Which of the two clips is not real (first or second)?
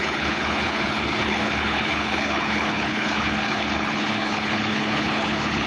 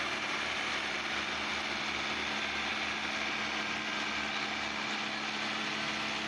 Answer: first